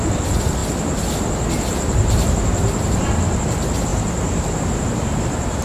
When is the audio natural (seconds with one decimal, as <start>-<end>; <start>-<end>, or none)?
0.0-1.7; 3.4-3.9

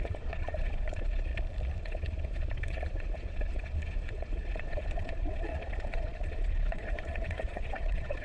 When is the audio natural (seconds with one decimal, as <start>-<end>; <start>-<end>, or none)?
1.3-1.8

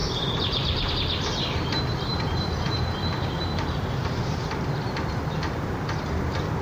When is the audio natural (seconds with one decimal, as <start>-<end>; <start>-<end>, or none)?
0.9-2.1; 4.6-6.6

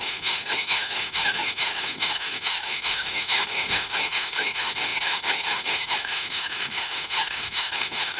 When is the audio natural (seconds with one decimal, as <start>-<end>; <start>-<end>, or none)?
none

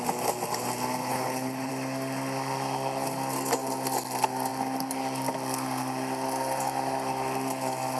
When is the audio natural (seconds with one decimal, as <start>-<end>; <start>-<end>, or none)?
0.0-1.0; 1.7-8.0

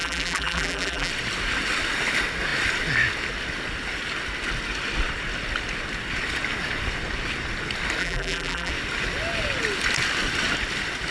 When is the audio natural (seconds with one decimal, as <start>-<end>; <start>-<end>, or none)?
1.1-8.0; 8.7-11.1

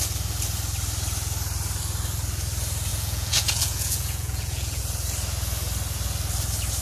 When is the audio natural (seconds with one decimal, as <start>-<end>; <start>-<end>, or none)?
0.0-2.9; 4.8-6.8

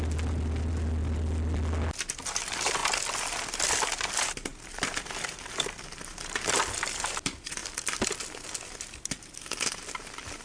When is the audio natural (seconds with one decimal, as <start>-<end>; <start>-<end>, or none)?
0.0-10.4